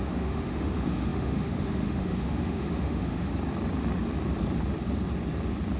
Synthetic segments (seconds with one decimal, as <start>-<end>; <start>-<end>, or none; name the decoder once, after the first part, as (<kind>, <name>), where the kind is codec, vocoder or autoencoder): 0.0-3.3 (autoencoder, DAC-VAE)